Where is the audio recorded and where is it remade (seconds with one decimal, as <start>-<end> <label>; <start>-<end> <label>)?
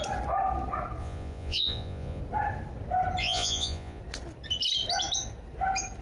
0.0-1.0 recorded; 1.0-2.2 remade; 2.2-3.2 recorded; 3.2-4.0 remade; 4.0-6.0 recorded